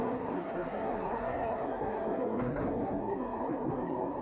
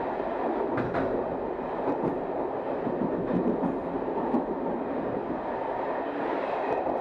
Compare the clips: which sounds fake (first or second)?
first